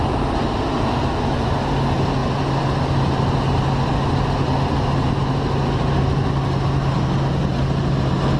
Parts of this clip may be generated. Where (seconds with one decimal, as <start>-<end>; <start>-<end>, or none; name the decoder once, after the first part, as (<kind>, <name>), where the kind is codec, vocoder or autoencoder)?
0.4-1.1 (vocoder, BigVGAN v2)